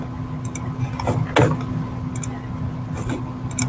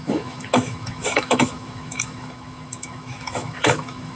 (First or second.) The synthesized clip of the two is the second